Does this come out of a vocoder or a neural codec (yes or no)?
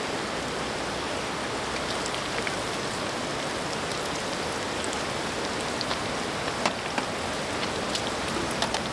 no